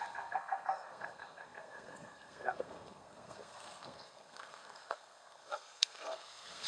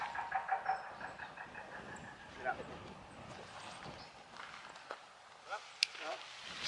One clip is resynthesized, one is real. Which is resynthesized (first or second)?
first